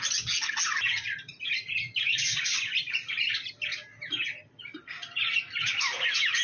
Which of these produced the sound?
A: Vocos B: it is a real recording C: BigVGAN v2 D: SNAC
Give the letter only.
B